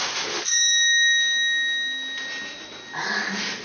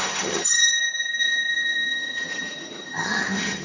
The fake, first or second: second